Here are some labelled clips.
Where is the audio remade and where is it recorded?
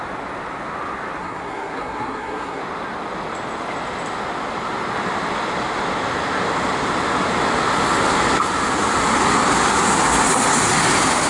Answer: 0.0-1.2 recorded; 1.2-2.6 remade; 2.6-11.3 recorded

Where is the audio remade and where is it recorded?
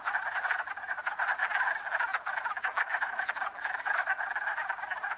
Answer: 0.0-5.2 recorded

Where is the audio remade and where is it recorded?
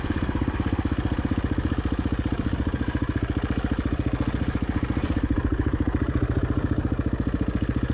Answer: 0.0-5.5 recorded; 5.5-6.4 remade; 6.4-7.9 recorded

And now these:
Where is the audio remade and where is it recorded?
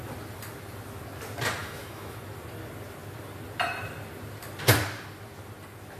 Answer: 0.0-1.6 recorded; 1.6-2.2 remade; 2.2-6.0 recorded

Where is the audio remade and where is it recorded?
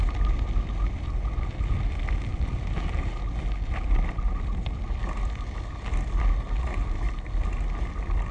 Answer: 0.0-8.3 recorded